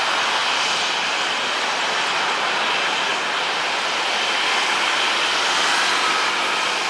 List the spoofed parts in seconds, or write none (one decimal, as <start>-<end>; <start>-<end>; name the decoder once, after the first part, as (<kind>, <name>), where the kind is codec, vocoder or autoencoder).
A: 0.4-0.9 (vocoder, BigVGAN v2); 3.1-3.8